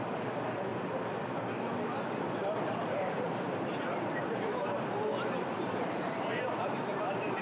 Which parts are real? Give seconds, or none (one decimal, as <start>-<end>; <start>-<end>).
0.0-2.9